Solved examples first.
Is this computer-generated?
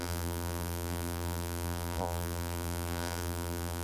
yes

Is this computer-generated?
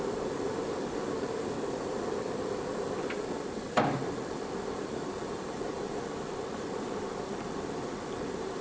yes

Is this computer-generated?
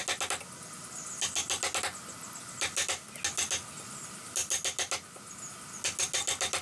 no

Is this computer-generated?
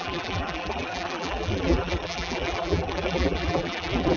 yes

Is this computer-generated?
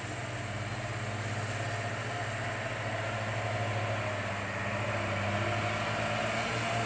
no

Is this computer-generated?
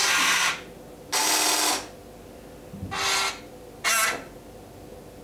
no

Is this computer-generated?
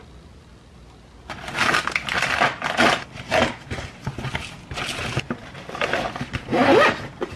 no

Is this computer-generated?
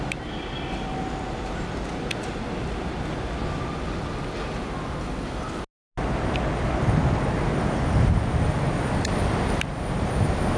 no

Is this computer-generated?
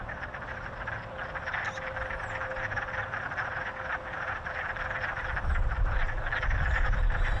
no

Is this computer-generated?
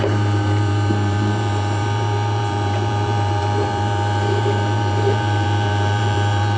yes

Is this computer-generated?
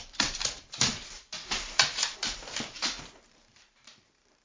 yes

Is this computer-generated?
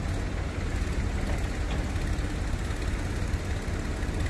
no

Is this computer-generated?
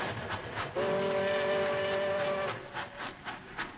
no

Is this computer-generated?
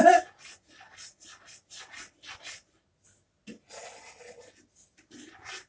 no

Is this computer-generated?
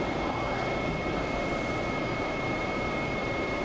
yes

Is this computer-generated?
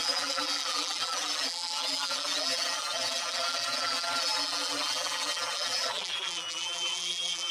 yes